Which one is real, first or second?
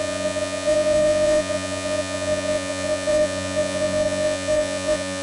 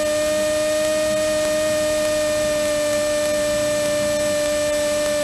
second